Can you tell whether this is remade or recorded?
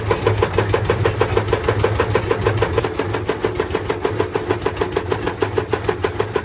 recorded